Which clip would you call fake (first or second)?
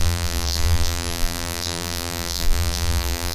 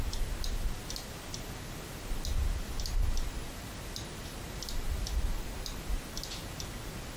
first